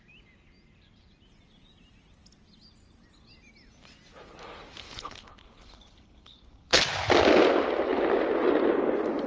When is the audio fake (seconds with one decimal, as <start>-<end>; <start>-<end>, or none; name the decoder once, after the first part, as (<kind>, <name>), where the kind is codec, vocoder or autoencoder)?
4.8-6.8 (codec, HILCodec)